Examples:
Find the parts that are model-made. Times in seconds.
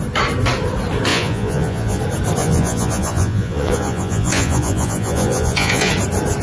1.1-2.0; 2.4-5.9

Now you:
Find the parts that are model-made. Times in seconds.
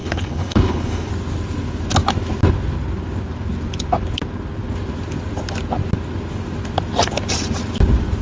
0.0-1.1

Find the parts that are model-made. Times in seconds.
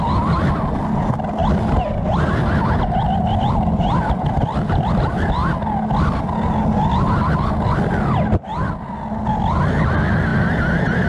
1.4-2.3; 10.3-11.1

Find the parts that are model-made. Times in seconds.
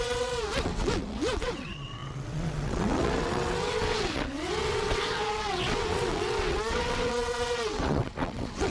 0.0-8.7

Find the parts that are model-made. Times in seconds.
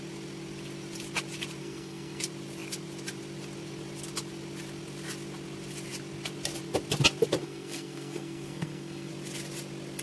1.6-2.2; 7.4-9.1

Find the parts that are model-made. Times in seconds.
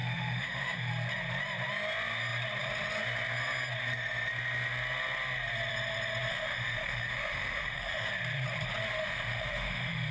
0.0-0.9; 6.3-8.1; 9.0-10.1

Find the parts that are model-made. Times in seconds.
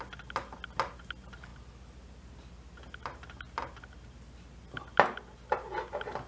none